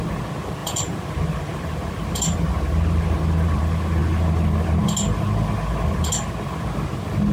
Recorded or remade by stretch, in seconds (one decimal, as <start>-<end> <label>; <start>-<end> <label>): 0.0-0.6 recorded; 0.6-2.5 remade; 2.5-7.3 recorded